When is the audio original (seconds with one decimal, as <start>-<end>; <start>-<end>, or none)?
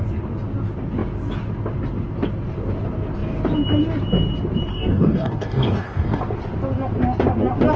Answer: 0.0-4.7; 6.2-7.8